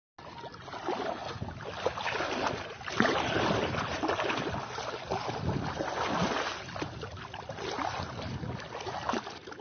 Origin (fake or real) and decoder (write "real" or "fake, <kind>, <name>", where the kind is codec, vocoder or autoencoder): real